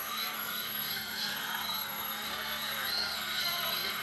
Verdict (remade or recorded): remade